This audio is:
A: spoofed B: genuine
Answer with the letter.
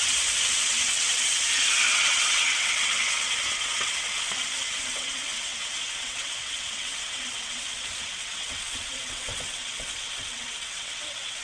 A